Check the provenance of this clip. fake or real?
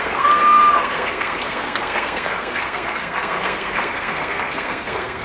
fake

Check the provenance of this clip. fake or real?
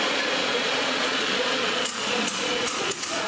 fake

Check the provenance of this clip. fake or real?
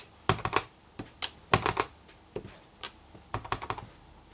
real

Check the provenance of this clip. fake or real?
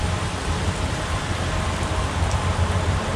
fake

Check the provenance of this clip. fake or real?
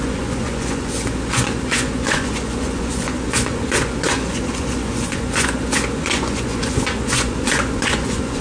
fake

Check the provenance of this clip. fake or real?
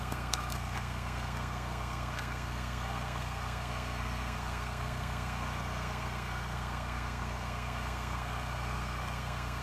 fake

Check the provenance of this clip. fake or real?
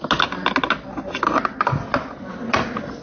real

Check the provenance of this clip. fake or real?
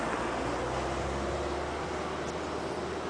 real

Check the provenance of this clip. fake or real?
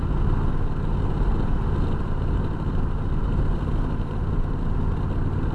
real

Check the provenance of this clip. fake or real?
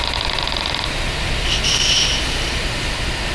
real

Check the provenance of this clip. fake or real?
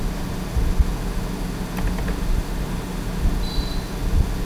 real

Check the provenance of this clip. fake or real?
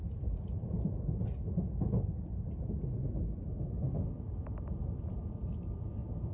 real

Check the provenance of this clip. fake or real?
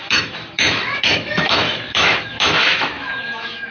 fake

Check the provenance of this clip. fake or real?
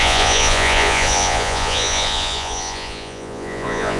fake